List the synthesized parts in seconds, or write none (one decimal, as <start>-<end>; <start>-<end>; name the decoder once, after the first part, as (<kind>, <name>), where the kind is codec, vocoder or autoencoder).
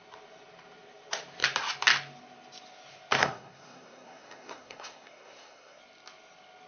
3.2-5.8 (codec, SNAC)